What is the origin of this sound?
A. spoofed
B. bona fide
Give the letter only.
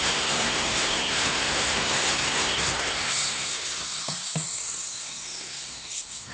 A